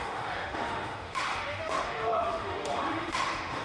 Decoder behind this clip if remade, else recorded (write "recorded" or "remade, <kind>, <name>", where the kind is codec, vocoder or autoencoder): remade, autoencoder, DAC-VAE